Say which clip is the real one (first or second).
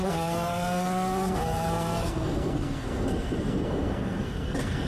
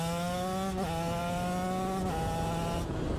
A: second